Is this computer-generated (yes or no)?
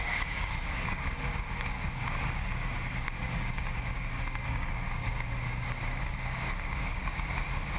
yes